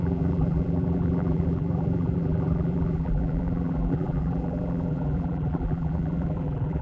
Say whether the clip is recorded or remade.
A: remade